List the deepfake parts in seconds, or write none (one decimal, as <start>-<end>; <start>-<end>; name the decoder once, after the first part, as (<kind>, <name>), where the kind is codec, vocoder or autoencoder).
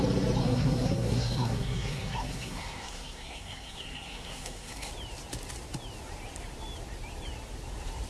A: 0.4-4.9 (codec, SNAC)